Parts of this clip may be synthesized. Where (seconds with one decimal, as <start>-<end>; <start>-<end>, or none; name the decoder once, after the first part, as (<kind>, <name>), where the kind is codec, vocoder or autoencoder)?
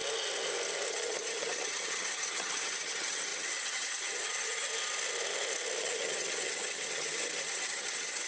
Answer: 0.9-4.7 (vocoder, HiFi-GAN); 5.8-8.3